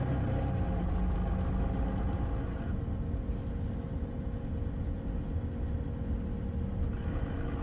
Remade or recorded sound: recorded